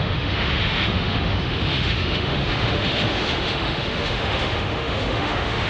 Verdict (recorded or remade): remade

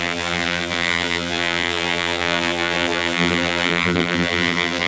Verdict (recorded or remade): remade